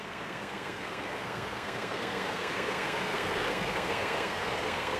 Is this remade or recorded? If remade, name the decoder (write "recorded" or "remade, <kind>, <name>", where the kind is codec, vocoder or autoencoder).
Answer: remade, codec, SNAC